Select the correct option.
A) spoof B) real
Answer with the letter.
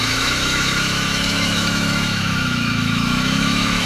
A